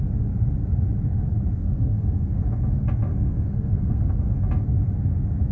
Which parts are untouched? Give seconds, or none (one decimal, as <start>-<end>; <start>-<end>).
0.0-1.6; 2.4-3.1; 4.3-5.5